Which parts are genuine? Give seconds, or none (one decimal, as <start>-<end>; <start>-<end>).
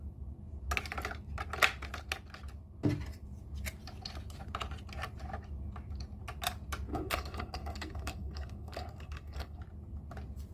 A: 0.0-6.9; 9.6-10.5